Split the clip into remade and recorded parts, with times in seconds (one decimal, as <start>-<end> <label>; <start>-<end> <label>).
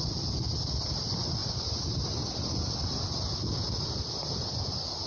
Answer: 0.0-5.1 recorded